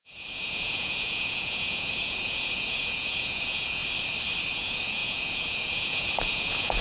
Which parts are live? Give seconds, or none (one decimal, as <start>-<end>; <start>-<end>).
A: 3.8-4.5